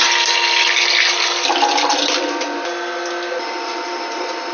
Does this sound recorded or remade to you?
recorded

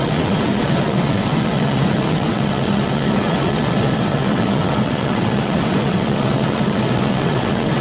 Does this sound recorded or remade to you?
remade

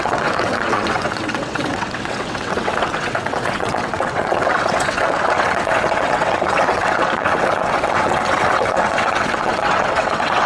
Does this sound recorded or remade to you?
remade